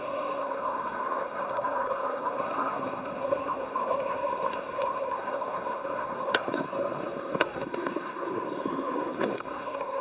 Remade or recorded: remade